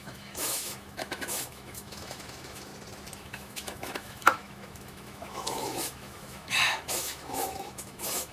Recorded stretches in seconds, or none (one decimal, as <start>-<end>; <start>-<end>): 2.7-3.2